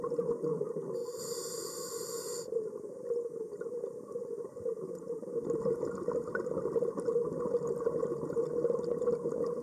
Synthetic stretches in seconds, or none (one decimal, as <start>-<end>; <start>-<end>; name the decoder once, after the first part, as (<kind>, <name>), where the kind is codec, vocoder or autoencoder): 1.0-5.3 (vocoder, BigVGAN v2)